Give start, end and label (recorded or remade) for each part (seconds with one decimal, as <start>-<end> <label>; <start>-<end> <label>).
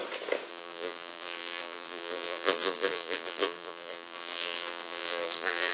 0.0-0.5 recorded; 0.5-5.7 remade